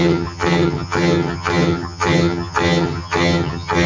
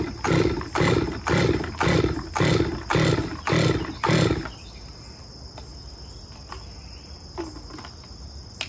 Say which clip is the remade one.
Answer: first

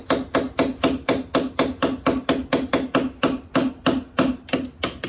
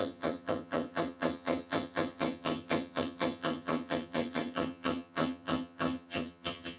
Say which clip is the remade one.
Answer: second